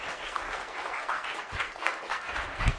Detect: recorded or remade remade